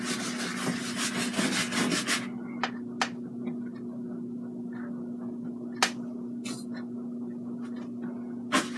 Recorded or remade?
recorded